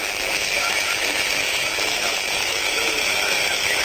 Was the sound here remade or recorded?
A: remade